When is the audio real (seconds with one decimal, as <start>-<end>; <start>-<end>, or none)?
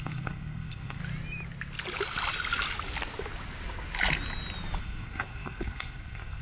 1.0-4.8